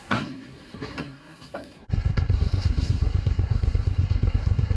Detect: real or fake fake